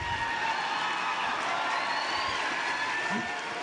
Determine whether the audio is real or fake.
real